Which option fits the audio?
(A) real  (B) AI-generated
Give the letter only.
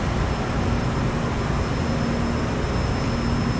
A